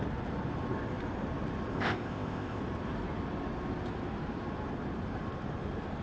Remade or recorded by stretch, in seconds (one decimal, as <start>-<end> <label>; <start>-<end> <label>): 0.0-1.7 recorded; 1.7-2.6 remade; 2.6-6.0 recorded